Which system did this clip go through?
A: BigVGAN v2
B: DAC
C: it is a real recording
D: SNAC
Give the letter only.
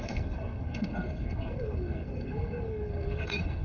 D